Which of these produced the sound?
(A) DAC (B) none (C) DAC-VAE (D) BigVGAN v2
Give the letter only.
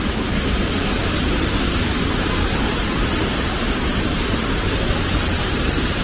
D